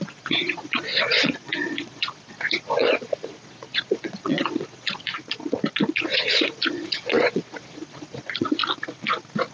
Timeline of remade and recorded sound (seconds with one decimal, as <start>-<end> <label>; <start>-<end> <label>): 0.0-5.1 remade; 5.1-6.0 recorded; 6.0-8.6 remade; 8.6-9.5 recorded